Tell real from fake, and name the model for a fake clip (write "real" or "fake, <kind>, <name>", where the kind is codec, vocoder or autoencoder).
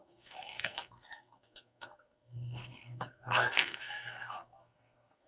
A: fake, codec, SNAC